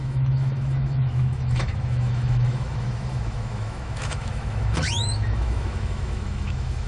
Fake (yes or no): yes